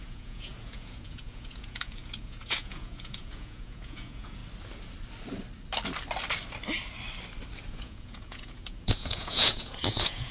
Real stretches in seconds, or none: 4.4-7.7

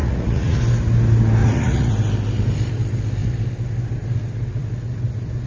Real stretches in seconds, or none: 0.6-1.4; 1.9-5.5

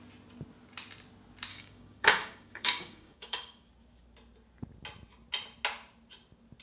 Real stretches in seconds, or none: 0.0-1.5; 3.7-6.6

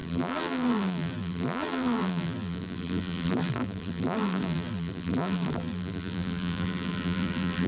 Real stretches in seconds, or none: none

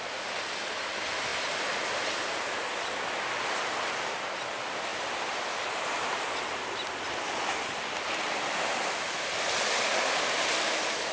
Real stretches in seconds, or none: 0.0-4.9; 5.4-11.1

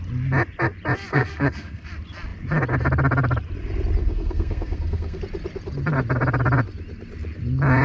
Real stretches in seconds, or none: 0.0-1.1; 1.9-4.0; 5.2-7.8